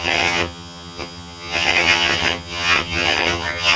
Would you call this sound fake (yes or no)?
yes